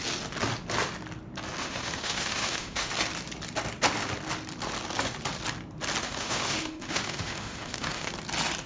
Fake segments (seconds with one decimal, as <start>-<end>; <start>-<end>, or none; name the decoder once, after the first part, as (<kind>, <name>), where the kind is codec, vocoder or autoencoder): 1.6-2.9 (autoencoder, DAC-VAE); 6.0-8.1